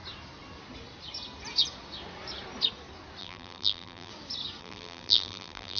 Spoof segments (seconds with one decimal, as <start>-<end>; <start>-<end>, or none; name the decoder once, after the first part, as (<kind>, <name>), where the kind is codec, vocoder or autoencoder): 3.2-4.1 (vocoder, BigVGAN v2); 4.6-5.8